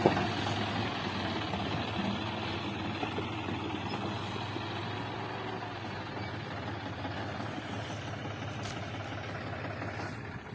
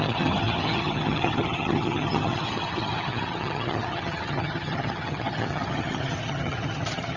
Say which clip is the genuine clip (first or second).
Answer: first